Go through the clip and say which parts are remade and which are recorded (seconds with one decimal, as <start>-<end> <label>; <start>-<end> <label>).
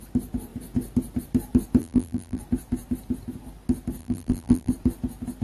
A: 0.0-1.8 recorded; 1.8-2.4 remade; 2.4-4.0 recorded; 4.0-4.7 remade; 4.7-5.4 recorded